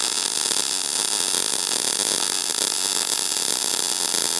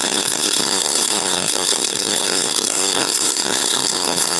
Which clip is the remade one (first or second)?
second